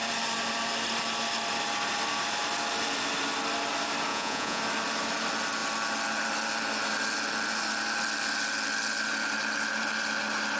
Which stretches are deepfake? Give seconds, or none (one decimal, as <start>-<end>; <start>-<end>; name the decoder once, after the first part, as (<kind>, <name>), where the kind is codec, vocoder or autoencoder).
4.1-4.6 (vocoder, Vocos)